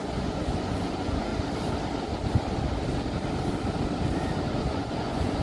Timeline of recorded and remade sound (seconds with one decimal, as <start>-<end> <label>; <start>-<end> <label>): 0.0-1.3 remade; 1.3-4.5 recorded; 4.5-5.4 remade